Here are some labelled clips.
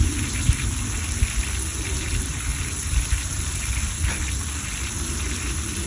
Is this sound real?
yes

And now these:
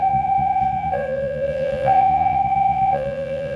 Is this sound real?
no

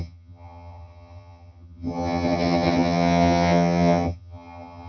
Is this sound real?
no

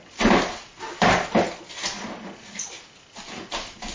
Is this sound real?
yes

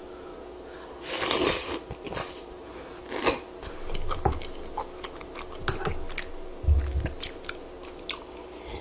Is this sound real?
yes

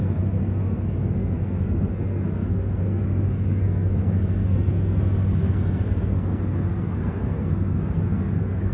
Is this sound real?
no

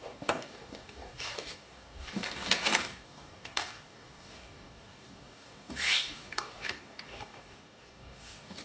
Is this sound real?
no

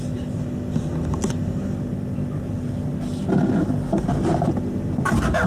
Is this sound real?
yes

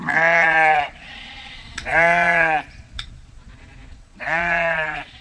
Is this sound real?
no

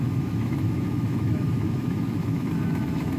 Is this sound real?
no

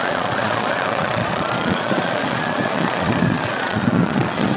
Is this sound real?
no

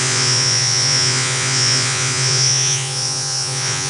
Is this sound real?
no